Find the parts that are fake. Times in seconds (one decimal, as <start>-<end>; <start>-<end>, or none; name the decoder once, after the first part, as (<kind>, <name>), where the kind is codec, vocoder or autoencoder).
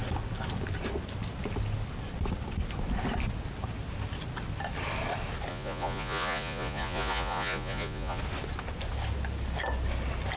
5.5-8.2 (vocoder, Vocos)